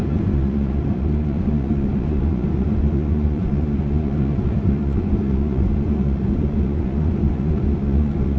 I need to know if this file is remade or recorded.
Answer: remade